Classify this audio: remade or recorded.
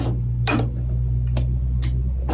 recorded